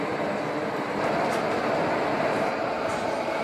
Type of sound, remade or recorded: recorded